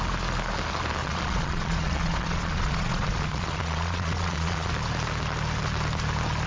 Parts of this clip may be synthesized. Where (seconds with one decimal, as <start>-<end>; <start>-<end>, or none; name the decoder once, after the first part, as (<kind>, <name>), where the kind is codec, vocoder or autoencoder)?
1.0-4.7 (vocoder, Vocos)